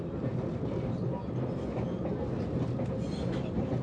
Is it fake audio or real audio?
real